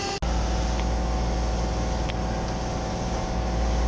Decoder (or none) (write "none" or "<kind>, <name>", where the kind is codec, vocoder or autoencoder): none